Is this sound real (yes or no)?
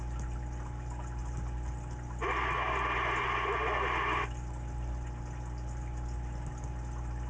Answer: yes